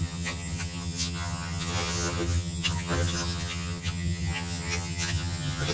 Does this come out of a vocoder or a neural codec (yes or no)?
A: yes